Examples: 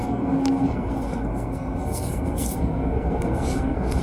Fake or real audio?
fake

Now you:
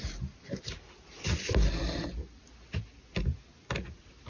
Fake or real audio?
real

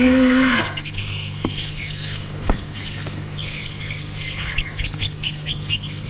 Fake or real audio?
fake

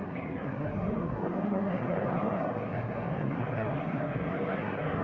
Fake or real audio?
fake